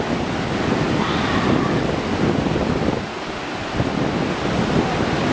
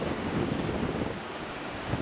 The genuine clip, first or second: first